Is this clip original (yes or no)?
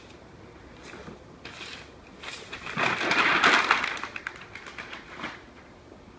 yes